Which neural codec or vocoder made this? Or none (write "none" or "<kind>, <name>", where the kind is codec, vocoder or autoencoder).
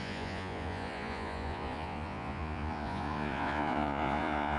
vocoder, Vocos